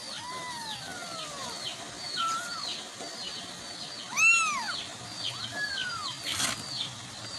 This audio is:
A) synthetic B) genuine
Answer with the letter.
B